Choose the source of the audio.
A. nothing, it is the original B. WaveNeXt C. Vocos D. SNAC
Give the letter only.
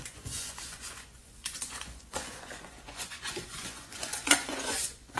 C